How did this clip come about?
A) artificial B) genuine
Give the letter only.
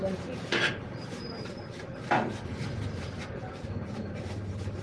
A